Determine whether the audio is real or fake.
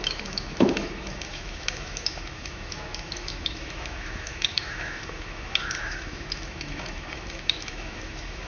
fake